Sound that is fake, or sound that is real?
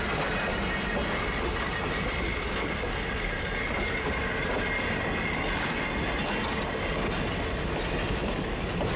real